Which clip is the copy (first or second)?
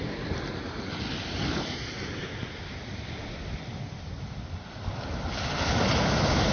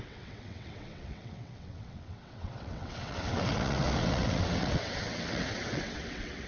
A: second